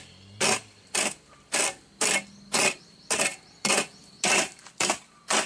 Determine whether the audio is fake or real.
real